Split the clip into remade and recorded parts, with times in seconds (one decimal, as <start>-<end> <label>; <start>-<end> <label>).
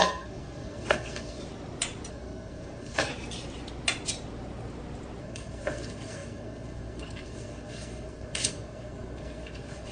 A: 0.0-1.4 remade; 1.4-2.1 recorded; 2.1-3.1 remade; 3.1-5.2 recorded; 5.2-9.9 remade